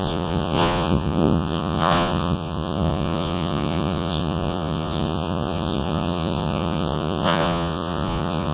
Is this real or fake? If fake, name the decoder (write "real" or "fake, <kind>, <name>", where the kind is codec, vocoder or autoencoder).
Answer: fake, vocoder, Vocos